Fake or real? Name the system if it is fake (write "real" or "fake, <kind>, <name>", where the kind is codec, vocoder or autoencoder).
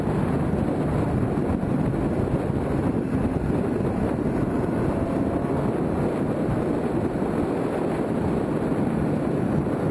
real